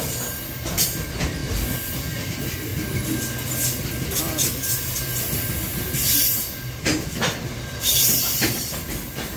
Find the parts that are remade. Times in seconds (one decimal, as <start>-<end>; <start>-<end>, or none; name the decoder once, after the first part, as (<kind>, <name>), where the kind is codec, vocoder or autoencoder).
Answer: 0.0-1.4 (vocoder, BigVGAN v2); 2.3-2.7; 4.2-9.4